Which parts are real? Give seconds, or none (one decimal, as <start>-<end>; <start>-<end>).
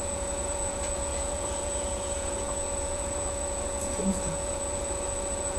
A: none